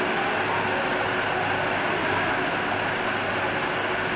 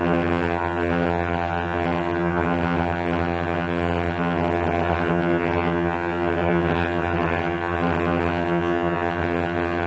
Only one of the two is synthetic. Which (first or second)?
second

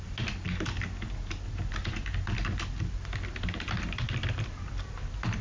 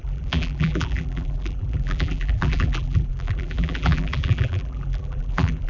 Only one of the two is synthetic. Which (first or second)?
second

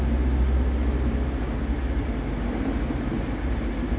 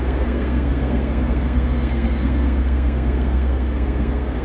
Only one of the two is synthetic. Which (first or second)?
second